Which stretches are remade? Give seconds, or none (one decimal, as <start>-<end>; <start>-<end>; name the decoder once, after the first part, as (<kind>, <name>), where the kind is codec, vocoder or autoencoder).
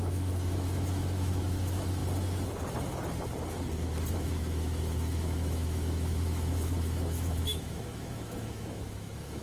0.0-2.0 (autoencoder, DAC-VAE); 4.1-9.4